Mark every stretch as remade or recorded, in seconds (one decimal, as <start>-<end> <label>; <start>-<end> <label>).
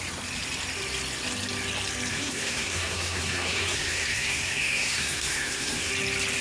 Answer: 0.0-2.1 recorded; 2.1-5.9 remade; 5.9-6.4 recorded